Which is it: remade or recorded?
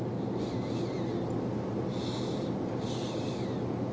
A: recorded